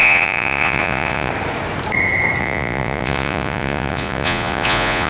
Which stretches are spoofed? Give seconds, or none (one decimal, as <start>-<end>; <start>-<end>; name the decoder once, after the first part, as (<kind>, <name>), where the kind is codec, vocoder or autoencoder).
0.0-1.3 (vocoder, Vocos); 2.4-5.1